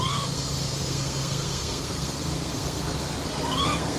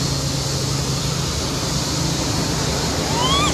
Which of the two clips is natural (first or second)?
second